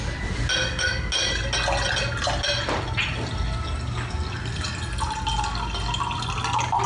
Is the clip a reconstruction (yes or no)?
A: no